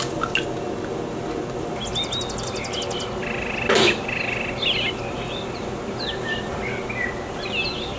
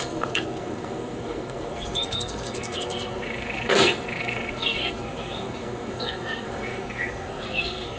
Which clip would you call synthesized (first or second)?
second